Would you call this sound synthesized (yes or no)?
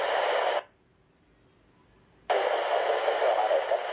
no